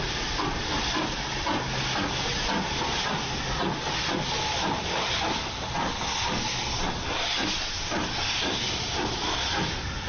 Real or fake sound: real